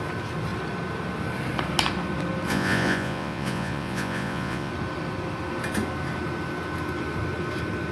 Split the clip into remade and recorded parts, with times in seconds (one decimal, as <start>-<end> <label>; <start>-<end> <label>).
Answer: 0.0-2.5 recorded; 2.5-4.7 remade; 4.7-7.9 recorded